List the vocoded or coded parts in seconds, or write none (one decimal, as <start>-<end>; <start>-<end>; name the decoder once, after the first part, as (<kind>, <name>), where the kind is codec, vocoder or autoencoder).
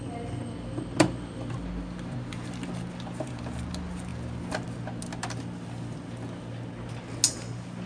none